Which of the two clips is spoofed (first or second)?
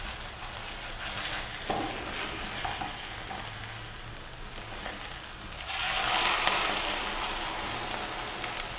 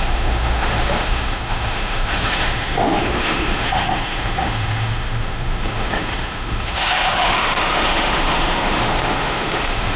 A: second